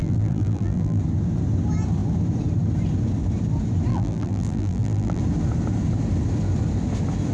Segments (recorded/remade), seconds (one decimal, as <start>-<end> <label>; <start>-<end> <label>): 0.0-1.0 remade; 1.0-3.9 recorded; 3.9-5.2 remade; 5.2-7.3 recorded